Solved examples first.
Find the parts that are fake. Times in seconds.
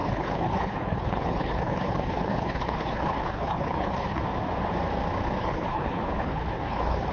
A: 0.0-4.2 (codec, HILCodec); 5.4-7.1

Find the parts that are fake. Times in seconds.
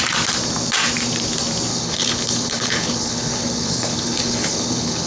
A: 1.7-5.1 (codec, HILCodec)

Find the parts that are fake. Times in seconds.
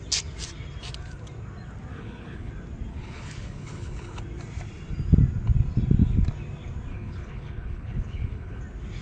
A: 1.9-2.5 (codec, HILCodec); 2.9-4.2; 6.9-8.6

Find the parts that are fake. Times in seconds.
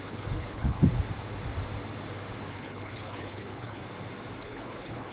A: 0.0-0.8 (codec, HILCodec); 2.5-3.8; 4.4-5.1